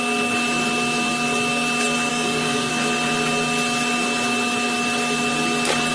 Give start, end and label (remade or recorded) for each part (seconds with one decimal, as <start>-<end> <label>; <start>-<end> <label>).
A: 0.0-2.1 recorded; 2.1-2.7 remade; 2.7-5.9 recorded